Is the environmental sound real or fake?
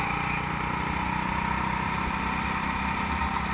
real